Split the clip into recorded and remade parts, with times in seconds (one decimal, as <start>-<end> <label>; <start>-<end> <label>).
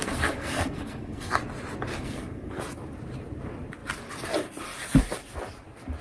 0.0-1.4 remade; 1.4-1.9 recorded; 1.9-2.6 remade; 2.6-6.0 recorded